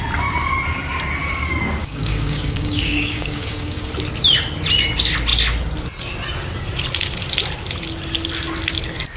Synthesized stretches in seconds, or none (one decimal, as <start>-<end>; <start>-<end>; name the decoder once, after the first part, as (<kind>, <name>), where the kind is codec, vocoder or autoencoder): 1.8-3.9 (codec, DAC)